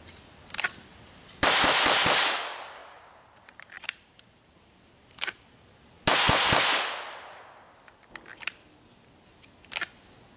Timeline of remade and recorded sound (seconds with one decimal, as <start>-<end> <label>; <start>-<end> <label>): 0.0-0.9 recorded; 0.9-1.8 remade; 1.8-2.8 recorded; 2.8-6.0 remade; 6.0-10.4 recorded